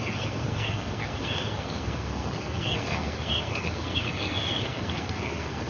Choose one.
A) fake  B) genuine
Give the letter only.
A